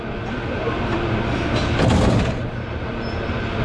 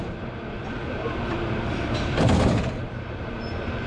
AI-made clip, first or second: second